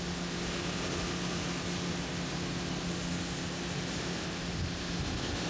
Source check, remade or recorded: recorded